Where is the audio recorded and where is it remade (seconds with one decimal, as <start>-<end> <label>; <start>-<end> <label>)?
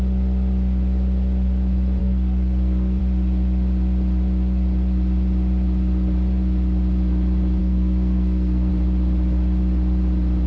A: 0.0-2.0 recorded; 2.0-3.0 remade; 3.0-7.6 recorded; 7.6-8.7 remade; 8.7-10.5 recorded